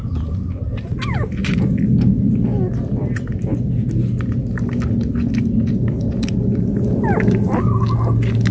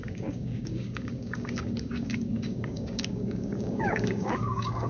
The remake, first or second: second